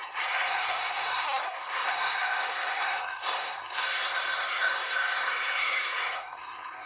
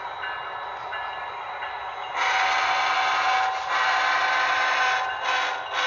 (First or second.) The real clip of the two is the second